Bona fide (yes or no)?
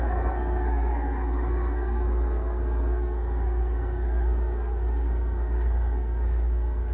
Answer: no